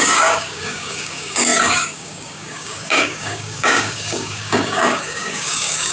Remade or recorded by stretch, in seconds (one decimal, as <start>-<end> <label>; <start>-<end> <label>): 0.0-5.9 remade